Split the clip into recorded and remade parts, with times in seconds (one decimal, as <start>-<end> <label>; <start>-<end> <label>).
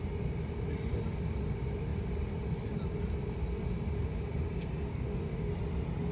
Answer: 0.0-4.9 recorded; 4.9-5.5 remade; 5.5-6.1 recorded